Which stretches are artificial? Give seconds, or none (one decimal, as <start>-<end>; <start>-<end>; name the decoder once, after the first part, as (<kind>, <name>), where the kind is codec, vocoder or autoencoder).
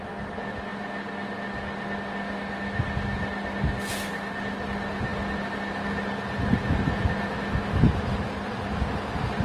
none